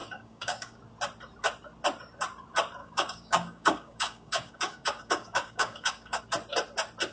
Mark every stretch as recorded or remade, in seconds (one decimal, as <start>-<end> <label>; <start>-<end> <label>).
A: 0.0-0.8 remade; 0.8-2.8 recorded; 2.8-6.2 remade; 6.2-7.1 recorded